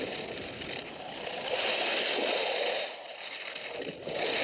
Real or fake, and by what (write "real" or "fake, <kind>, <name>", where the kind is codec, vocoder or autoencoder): real